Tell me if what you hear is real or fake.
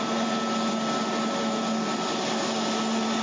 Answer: real